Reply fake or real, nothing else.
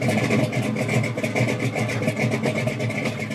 real